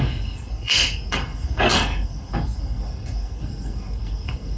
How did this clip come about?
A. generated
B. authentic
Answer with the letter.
A